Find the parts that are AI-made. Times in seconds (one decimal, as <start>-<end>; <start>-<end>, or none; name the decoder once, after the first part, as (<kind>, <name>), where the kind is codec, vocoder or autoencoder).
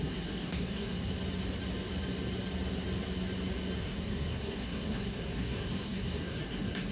0.0-1.1 (codec, SNAC); 3.8-6.9